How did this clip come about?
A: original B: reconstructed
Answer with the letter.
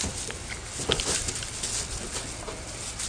A